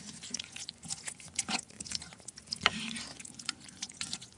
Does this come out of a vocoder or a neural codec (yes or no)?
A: yes